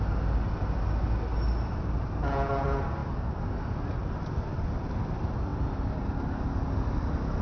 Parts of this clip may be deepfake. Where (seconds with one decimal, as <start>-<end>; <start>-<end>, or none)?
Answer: none

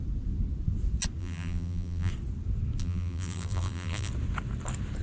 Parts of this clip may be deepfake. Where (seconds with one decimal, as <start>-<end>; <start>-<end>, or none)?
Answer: 1.2-2.1; 2.8-4.1

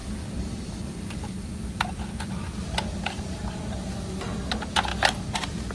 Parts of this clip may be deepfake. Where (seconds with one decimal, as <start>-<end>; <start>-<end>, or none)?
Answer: 0.0-3.4

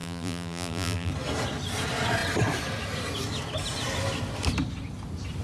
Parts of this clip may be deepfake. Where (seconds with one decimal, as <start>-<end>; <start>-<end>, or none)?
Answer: 0.0-1.1

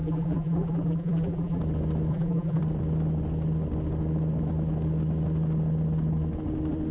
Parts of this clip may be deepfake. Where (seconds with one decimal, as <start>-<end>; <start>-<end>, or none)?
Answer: 0.0-1.6; 2.1-2.6

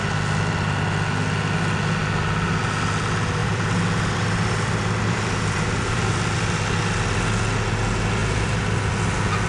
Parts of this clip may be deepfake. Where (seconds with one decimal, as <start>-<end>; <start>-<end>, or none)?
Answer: 3.4-6.8; 8.2-8.9